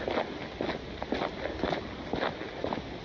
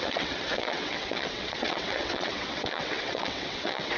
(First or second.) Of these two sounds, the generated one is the second